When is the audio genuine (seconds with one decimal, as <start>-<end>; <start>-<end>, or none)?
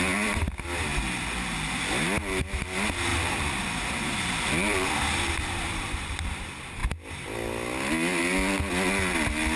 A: 0.0-3.1; 4.9-9.6